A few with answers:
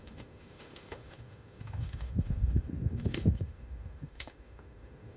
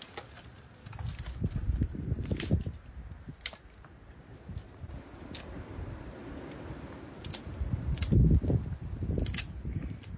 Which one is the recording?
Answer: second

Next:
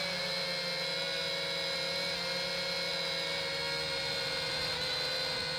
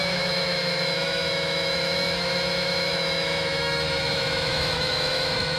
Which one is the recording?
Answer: first